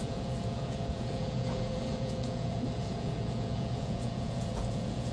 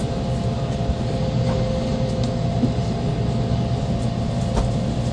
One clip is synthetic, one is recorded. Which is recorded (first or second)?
second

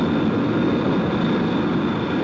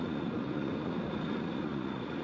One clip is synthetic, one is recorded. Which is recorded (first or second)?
first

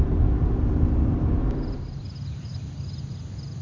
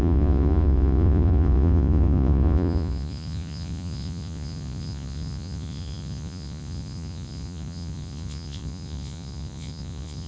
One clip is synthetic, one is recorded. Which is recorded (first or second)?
first